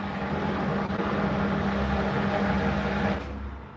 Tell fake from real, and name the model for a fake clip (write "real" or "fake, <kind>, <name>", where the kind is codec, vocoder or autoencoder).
real